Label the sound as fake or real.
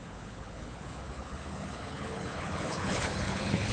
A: fake